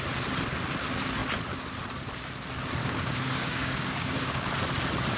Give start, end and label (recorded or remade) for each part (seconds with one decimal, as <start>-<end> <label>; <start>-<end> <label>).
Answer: 0.0-2.8 recorded; 2.8-4.5 remade; 4.5-5.2 recorded